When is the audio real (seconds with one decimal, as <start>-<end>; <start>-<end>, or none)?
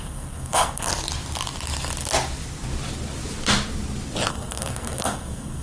0.9-4.3